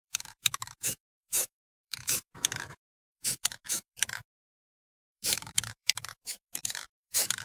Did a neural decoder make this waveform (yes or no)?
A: yes